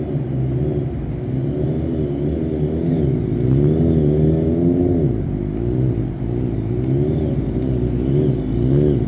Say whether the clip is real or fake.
real